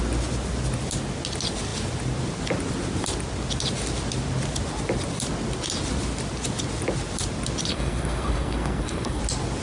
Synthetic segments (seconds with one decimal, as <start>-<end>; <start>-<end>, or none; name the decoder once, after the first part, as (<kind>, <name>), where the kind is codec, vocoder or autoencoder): 7.7-9.2 (codec, SNAC)

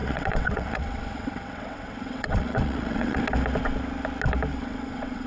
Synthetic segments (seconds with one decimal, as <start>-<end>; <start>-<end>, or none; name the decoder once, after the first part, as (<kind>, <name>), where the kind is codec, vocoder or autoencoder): 0.0-3.2 (vocoder, WaveNeXt); 4.5-5.3

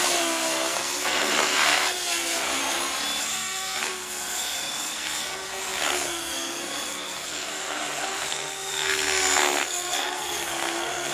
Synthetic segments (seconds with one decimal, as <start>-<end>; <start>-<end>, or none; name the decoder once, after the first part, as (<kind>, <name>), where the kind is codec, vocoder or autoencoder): 0.0-2.6 (codec, SNAC); 3.2-11.1

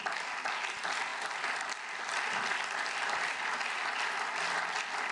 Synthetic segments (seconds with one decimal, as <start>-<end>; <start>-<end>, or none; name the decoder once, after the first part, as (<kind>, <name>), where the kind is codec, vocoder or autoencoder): none

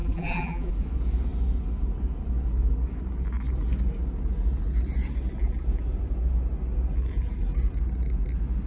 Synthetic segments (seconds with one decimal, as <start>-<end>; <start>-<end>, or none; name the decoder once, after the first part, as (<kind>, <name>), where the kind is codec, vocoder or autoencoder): 0.0-0.7 (vocoder, BigVGAN v2)

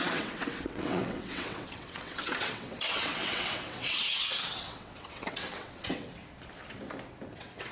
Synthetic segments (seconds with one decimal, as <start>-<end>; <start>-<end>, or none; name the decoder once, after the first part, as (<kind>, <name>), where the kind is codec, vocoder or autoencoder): 0.0-6.2 (vocoder, WaveNeXt); 7.3-7.7